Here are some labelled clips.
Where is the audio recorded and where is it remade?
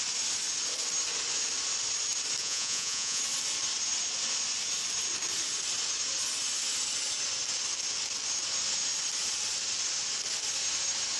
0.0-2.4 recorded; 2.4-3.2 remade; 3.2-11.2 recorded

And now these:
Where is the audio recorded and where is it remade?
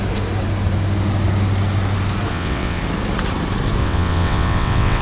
0.0-2.3 recorded; 2.3-2.8 remade; 2.8-3.8 recorded; 3.8-5.0 remade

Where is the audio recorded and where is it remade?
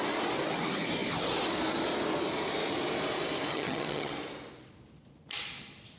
0.0-3.5 recorded; 3.5-4.1 remade; 4.1-6.0 recorded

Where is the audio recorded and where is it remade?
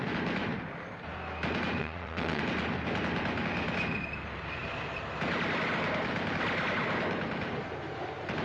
0.0-1.8 recorded; 1.8-2.4 remade; 2.4-8.4 recorded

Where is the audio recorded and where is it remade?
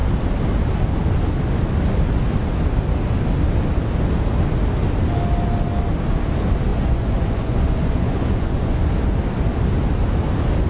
0.0-6.7 recorded; 6.7-8.9 remade; 8.9-10.7 recorded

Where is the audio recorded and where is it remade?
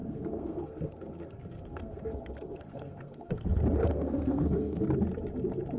0.0-3.5 remade; 3.5-3.9 recorded; 3.9-4.8 remade; 4.8-5.8 recorded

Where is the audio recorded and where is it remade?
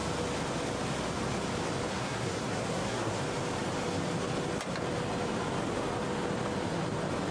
0.0-1.9 recorded; 1.9-3.2 remade; 3.2-7.3 recorded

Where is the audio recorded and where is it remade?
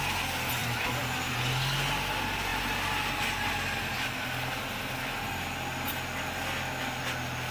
0.0-0.6 recorded; 0.6-1.3 remade; 1.3-7.5 recorded